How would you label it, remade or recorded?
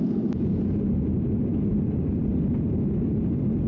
recorded